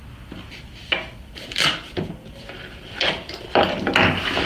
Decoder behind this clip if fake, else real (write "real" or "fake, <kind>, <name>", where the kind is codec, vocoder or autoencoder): real